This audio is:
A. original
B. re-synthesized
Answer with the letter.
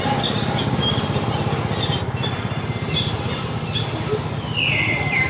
A